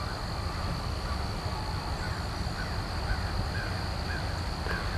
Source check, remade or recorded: recorded